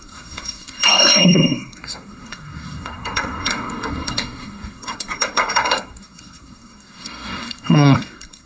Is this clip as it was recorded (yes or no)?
no